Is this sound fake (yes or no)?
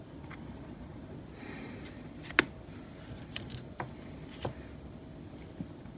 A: no